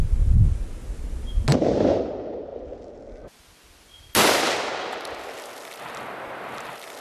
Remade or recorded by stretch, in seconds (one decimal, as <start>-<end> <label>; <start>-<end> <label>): 0.0-7.0 recorded